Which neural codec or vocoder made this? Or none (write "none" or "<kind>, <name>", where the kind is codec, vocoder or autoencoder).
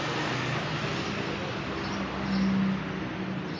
none